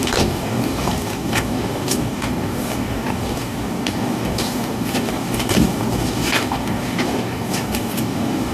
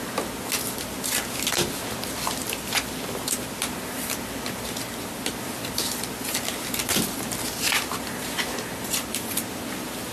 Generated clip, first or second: first